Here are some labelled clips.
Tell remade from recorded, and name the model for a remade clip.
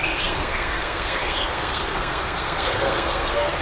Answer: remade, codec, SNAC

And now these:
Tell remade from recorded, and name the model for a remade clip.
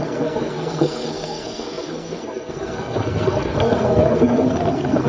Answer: remade, codec, SNAC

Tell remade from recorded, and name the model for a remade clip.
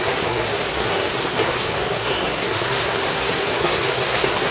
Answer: remade, codec, SNAC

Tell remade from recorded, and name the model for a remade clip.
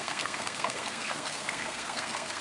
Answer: remade, codec, SNAC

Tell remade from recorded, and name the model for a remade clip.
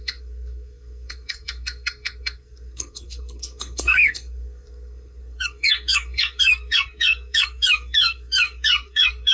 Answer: remade, codec, SNAC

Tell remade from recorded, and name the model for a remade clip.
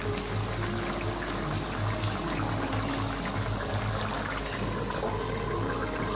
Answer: recorded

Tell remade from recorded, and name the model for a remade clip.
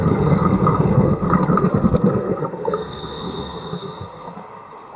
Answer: remade, codec, SNAC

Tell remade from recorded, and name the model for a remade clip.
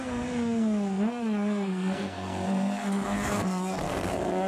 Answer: remade, codec, SNAC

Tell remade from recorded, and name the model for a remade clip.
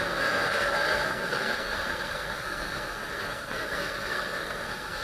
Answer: remade, codec, SNAC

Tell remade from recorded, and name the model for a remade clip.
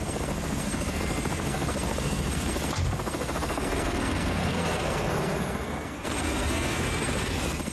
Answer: remade, codec, SNAC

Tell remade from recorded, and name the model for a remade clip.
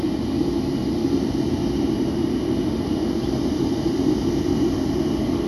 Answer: recorded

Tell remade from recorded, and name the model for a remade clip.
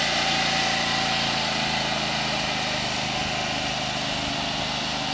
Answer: recorded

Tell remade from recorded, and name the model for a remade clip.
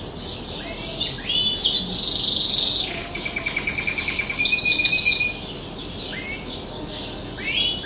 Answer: recorded